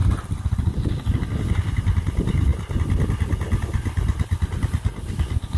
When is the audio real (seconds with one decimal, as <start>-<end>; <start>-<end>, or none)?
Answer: 0.0-5.6